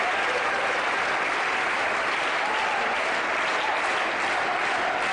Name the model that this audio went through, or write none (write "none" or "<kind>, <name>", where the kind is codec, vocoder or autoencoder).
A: none